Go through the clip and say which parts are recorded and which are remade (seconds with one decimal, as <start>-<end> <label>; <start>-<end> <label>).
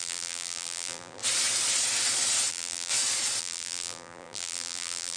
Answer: 0.0-1.2 remade; 1.2-2.5 recorded; 2.5-2.9 remade; 2.9-3.4 recorded; 3.4-5.2 remade